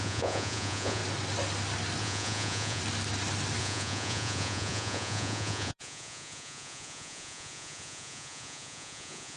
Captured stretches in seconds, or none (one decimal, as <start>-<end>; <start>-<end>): 1.0-2.0; 2.8-3.6